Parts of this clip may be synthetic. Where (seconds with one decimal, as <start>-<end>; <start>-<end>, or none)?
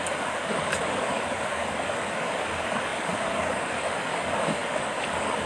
0.0-5.5